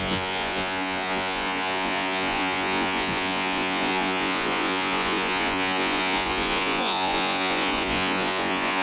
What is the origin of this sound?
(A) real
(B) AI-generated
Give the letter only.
B